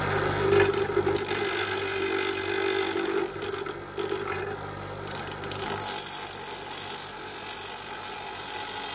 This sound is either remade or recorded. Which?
recorded